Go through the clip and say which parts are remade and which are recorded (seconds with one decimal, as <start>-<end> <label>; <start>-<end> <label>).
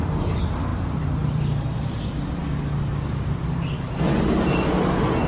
0.0-0.7 recorded; 0.7-2.0 remade; 2.0-5.3 recorded